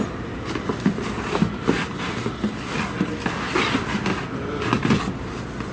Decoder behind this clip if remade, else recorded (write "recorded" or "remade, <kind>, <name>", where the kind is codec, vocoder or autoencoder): recorded